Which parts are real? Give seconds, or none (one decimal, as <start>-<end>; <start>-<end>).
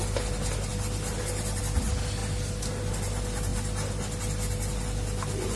0.0-5.6